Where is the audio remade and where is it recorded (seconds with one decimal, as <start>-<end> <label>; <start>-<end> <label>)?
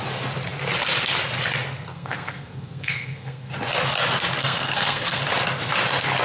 0.0-1.9 recorded; 1.9-3.5 remade; 3.5-4.4 recorded; 4.4-5.2 remade; 5.2-6.2 recorded